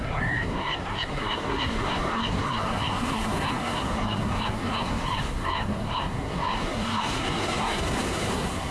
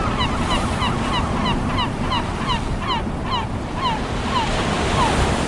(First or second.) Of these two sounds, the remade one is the first